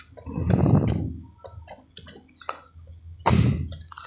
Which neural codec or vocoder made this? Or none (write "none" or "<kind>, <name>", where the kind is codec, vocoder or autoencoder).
none